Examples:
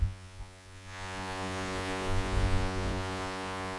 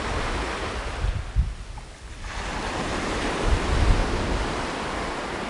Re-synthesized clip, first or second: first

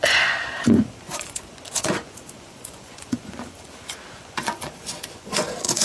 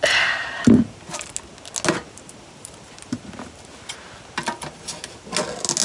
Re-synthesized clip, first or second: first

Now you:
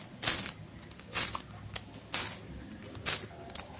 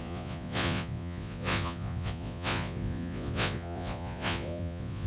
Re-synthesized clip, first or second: second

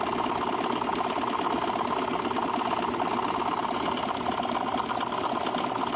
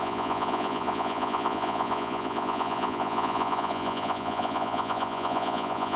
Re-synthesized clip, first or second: second